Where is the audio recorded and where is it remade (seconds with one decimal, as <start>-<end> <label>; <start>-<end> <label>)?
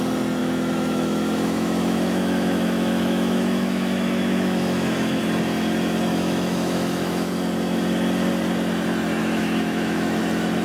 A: 0.0-0.4 recorded; 0.4-5.2 remade; 5.2-6.1 recorded; 6.1-7.3 remade; 7.3-9.2 recorded; 9.2-10.2 remade; 10.2-10.6 recorded